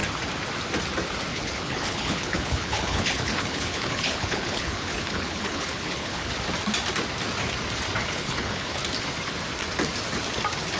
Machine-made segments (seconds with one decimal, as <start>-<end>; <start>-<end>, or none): 1.3-6.3; 8.0-8.8